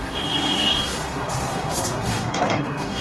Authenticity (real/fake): fake